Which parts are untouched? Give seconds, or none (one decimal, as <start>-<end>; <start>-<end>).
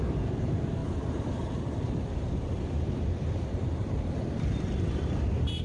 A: none